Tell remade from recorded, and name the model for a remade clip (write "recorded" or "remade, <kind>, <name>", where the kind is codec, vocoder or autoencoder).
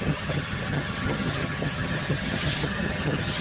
remade, vocoder, HiFi-GAN